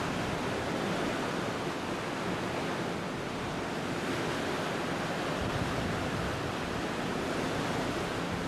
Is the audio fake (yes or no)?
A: no